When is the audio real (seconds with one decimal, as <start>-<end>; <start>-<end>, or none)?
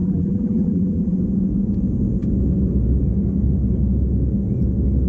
1.2-5.1